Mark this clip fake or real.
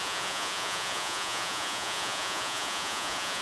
fake